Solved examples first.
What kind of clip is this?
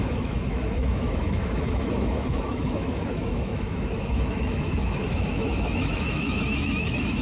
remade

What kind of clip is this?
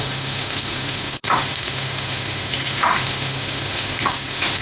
remade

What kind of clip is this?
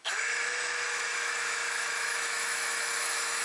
remade